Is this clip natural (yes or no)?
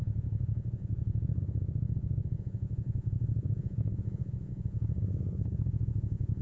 no